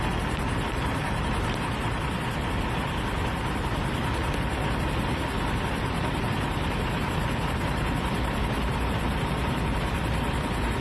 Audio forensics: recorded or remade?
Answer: remade